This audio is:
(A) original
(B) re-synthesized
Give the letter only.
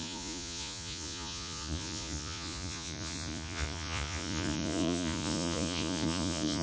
B